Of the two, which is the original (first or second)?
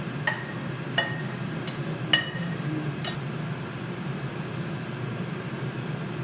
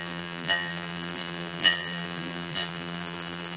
first